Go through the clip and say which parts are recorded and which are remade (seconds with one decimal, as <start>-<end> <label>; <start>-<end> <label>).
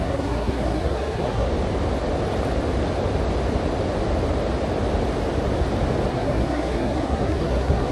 0.0-1.5 remade; 1.5-6.1 recorded; 6.1-7.9 remade